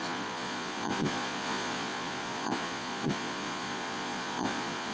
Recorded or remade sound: remade